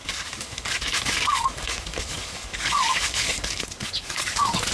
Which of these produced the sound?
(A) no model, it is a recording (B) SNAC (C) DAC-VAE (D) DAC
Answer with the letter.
D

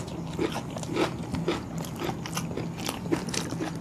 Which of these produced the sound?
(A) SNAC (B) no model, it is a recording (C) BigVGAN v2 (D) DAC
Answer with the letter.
B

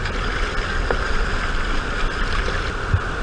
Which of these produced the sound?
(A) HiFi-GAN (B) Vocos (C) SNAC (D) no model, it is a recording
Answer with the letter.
D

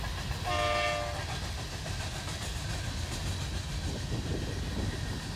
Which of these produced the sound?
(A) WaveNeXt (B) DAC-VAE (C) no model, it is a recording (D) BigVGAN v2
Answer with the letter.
C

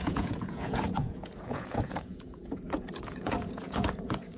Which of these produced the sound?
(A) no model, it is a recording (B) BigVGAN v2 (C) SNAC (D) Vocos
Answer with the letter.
D